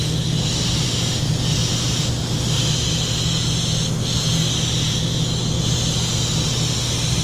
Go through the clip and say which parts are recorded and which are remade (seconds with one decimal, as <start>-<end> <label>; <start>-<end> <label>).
0.0-7.2 recorded